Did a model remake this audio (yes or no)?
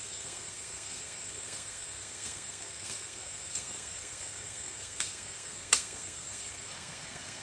yes